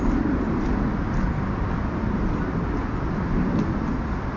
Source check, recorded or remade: recorded